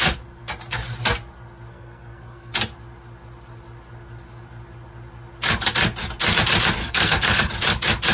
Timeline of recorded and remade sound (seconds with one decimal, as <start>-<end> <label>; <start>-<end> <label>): 0.0-1.7 recorded; 1.7-2.5 remade; 2.5-6.8 recorded; 6.8-7.5 remade; 7.5-8.1 recorded